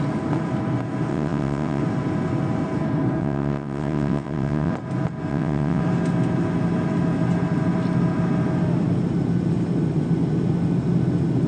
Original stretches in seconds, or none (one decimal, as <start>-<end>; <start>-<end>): 0.0-1.1; 1.8-3.2; 4.7-5.3; 5.8-11.5